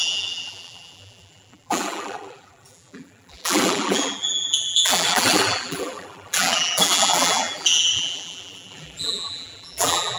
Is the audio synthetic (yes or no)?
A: yes